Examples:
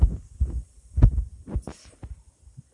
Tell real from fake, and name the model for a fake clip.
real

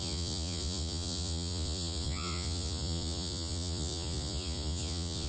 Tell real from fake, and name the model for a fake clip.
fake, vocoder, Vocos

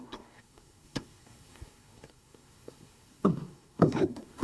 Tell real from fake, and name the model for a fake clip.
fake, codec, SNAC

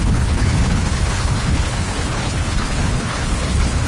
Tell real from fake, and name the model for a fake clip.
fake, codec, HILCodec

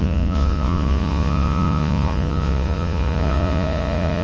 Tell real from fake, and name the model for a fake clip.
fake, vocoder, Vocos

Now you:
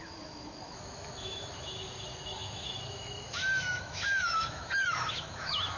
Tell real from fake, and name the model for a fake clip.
fake, autoencoder, DAC-VAE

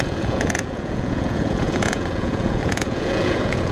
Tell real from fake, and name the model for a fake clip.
fake, vocoder, Vocos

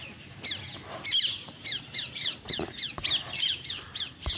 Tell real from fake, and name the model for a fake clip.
real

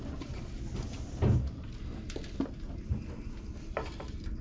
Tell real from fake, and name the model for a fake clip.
real